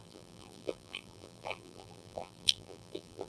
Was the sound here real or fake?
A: fake